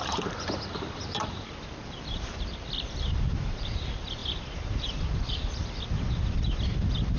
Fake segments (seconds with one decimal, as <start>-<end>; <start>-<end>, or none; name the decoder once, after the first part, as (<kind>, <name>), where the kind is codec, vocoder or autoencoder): 0.0-7.2 (vocoder, BigVGAN v2)